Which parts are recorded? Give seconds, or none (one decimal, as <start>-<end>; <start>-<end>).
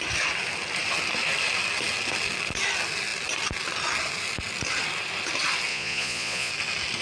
0.0-5.7; 6.5-7.0